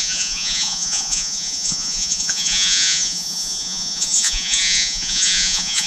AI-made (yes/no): yes